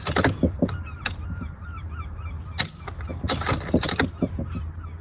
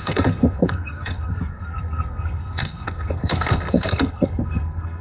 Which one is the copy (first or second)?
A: second